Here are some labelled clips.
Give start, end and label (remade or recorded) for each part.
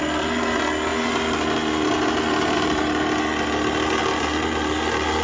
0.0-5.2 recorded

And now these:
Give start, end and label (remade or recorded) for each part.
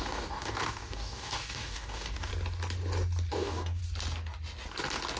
0.0-2.3 remade; 2.3-3.3 recorded; 3.3-3.8 remade; 3.8-5.2 recorded